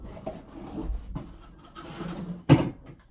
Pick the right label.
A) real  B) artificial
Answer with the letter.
A